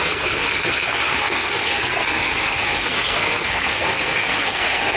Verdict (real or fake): fake